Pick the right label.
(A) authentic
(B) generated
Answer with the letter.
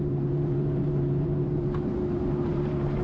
B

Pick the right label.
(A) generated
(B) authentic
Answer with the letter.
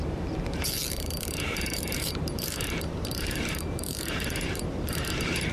A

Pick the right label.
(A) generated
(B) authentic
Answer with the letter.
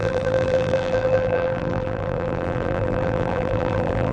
A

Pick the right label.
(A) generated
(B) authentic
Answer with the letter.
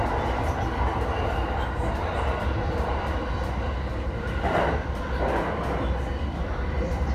B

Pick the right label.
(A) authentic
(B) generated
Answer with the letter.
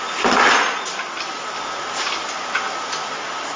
B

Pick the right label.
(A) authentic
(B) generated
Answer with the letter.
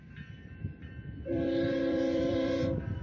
B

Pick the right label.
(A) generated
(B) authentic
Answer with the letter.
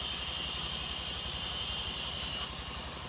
B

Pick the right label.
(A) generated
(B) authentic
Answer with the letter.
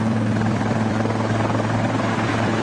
A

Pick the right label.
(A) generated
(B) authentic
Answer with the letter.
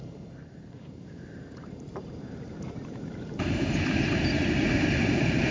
A